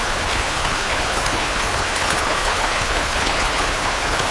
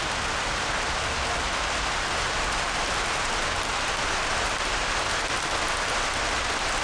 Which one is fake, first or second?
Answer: first